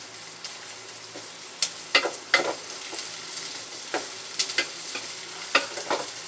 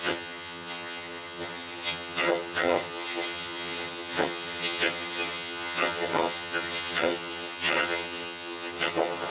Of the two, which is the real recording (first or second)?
first